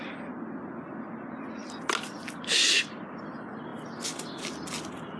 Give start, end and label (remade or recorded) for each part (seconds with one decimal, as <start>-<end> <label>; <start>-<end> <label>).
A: 0.0-5.2 recorded